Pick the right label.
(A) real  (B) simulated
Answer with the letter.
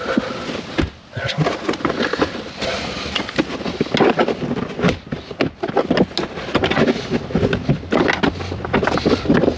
A